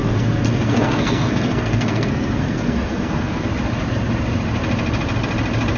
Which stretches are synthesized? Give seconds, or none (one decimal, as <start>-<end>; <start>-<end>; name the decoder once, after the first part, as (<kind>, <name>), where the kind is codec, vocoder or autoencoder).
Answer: 0.0-3.5 (codec, SNAC)